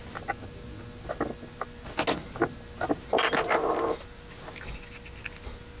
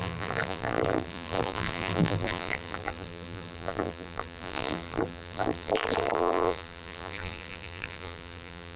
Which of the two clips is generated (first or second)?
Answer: second